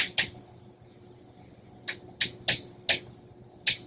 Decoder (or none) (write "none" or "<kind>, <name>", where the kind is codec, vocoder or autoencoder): none